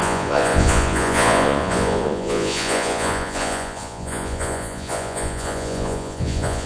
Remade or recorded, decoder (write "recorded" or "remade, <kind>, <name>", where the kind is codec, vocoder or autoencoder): remade, vocoder, Vocos